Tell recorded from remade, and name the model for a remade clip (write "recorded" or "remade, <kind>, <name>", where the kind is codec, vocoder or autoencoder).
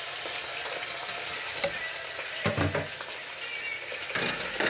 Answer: recorded